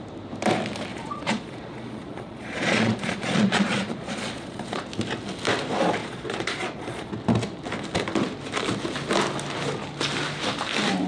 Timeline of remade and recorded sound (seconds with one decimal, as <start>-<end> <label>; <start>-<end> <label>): 0.0-0.9 recorded; 0.9-4.8 remade; 4.8-6.0 recorded; 6.0-7.1 remade; 7.1-11.1 recorded